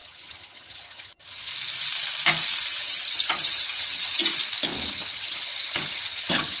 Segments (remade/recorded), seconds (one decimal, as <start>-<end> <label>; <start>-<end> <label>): 0.0-1.5 remade; 1.5-2.7 recorded; 2.7-4.2 remade; 4.2-4.9 recorded; 4.9-6.6 remade